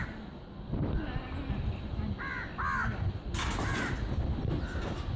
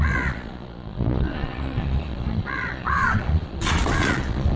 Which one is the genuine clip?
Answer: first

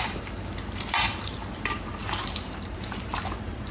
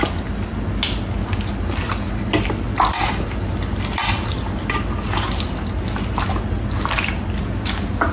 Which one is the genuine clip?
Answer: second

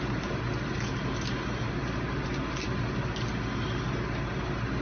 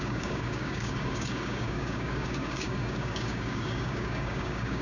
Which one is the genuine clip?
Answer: first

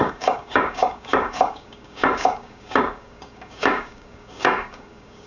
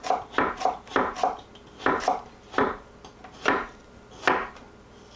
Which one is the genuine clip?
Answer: second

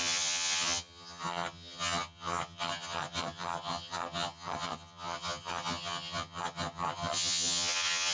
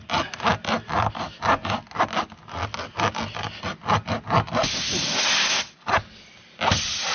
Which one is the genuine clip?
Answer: second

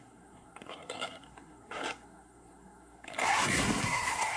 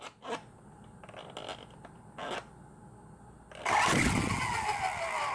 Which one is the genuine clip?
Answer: second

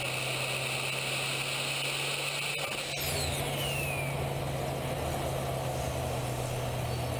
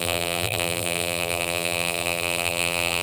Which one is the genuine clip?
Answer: first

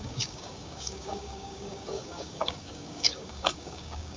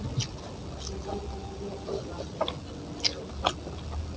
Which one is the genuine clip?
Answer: second